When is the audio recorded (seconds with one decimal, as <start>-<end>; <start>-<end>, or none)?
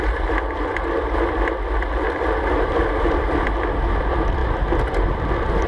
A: 0.0-5.7